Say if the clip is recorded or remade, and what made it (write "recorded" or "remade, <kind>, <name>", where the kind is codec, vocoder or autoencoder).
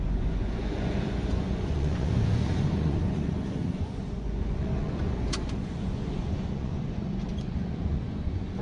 remade, vocoder, Vocos